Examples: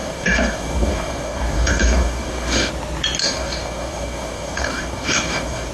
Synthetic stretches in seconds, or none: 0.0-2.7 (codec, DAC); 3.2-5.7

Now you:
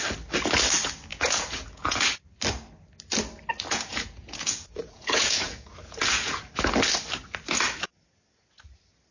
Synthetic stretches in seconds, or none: 1.1-2.0 (vocoder, Vocos); 3.7-6.5